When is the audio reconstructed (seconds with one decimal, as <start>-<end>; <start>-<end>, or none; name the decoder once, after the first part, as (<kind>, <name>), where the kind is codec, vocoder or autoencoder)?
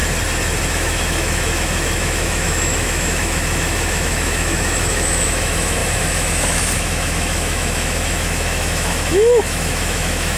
0.7-10.4 (autoencoder, DAC-VAE)